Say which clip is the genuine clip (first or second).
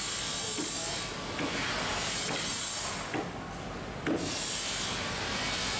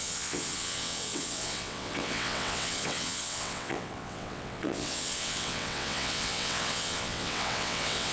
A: first